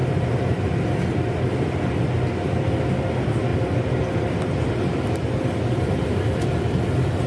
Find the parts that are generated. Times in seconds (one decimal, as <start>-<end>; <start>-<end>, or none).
none